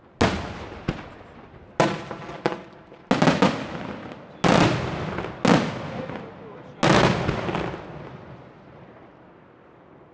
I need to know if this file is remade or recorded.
recorded